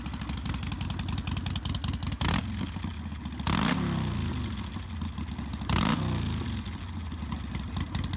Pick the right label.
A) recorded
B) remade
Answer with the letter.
A